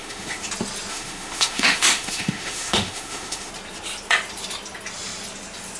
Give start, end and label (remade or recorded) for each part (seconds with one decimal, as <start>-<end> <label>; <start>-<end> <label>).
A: 0.0-0.5 remade; 0.5-0.9 recorded; 0.9-3.5 remade; 3.5-5.8 recorded